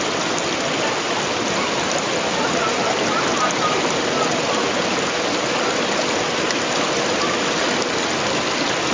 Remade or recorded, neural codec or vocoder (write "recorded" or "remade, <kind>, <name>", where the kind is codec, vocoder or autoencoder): recorded